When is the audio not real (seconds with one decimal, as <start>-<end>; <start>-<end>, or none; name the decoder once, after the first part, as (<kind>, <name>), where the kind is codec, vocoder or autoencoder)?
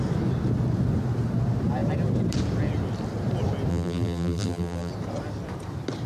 3.7-4.9 (vocoder, BigVGAN v2)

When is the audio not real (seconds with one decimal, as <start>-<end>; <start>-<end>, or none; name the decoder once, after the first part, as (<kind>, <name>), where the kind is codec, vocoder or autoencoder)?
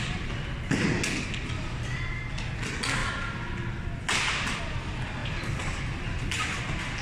5.2-6.2 (vocoder, BigVGAN v2)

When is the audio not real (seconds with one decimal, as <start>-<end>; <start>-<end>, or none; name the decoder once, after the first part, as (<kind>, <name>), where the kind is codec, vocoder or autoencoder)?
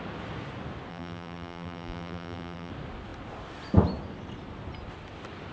0.9-2.7 (vocoder, BigVGAN v2)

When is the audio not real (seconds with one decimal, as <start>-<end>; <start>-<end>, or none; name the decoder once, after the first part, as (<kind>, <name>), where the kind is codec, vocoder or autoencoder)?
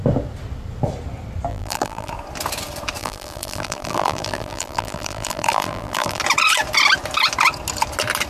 1.5-2.1 (vocoder, BigVGAN v2); 3.0-6.2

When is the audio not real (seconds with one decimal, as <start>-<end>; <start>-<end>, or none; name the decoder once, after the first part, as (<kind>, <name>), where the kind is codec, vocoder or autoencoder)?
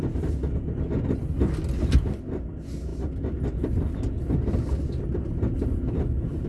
none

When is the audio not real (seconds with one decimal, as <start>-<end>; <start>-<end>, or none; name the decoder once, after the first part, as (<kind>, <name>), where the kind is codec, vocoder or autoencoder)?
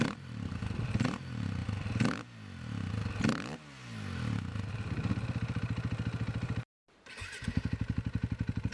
0.0-1.6 (vocoder, BigVGAN v2); 4.7-8.7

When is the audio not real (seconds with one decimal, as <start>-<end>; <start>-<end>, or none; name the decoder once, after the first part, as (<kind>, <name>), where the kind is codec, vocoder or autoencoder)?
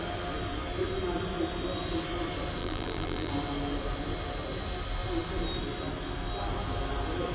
2.6-3.3 (vocoder, BigVGAN v2)